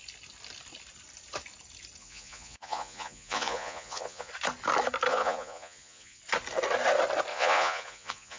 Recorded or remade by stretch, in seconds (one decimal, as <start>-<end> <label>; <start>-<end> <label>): 0.0-2.0 recorded; 2.0-4.3 remade; 4.3-5.1 recorded; 5.1-6.2 remade; 6.2-7.3 recorded; 7.3-8.4 remade